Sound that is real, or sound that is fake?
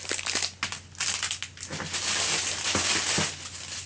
real